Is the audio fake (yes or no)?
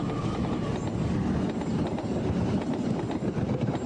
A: no